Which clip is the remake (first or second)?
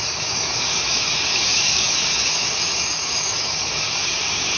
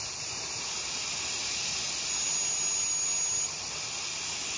first